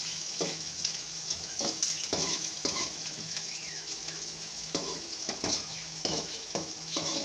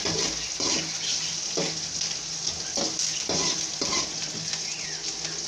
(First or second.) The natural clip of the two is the second